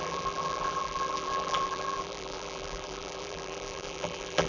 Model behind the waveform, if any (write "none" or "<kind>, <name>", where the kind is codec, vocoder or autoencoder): vocoder, BigVGAN v2